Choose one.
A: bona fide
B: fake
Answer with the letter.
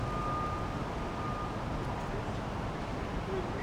A